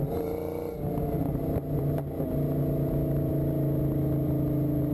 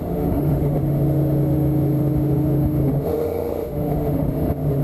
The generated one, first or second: second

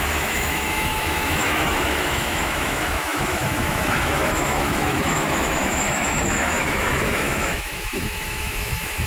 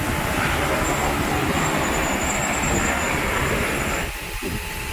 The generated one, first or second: first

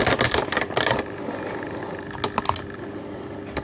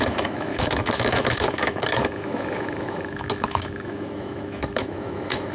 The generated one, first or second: second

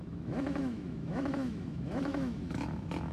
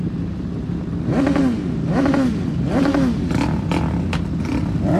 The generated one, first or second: first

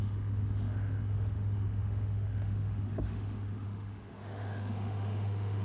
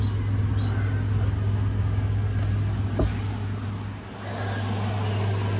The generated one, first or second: first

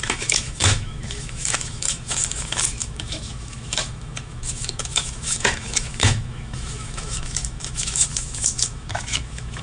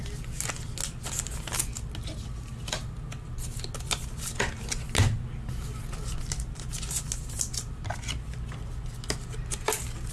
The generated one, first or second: first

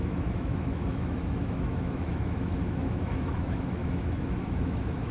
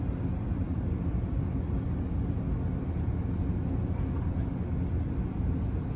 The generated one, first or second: first